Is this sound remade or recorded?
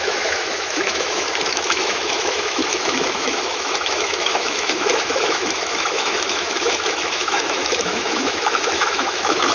remade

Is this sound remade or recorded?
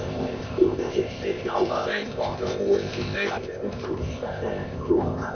remade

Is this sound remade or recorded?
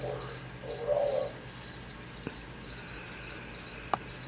recorded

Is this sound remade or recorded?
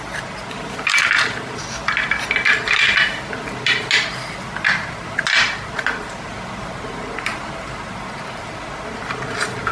recorded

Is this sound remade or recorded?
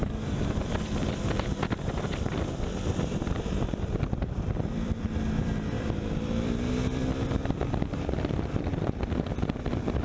remade